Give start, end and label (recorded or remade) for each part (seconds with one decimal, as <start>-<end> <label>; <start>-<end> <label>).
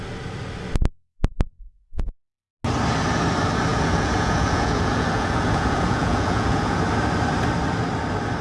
0.0-1.6 recorded; 1.6-2.5 remade; 2.5-3.7 recorded; 3.7-6.8 remade; 6.8-8.4 recorded